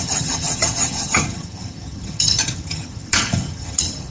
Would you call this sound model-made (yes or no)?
yes